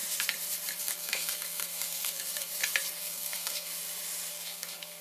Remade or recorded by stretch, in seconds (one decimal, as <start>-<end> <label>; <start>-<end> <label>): 0.0-0.8 recorded; 0.8-2.5 remade; 2.5-3.0 recorded; 3.0-3.7 remade; 3.7-4.3 recorded; 4.3-5.0 remade